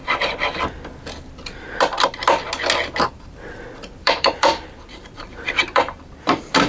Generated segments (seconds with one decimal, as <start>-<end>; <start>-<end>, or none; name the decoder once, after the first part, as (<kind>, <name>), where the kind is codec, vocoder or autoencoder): 4.0-6.7 (vocoder, BigVGAN v2)